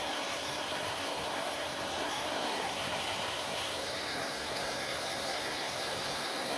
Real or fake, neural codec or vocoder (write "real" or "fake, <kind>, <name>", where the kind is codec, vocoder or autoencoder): fake, codec, SNAC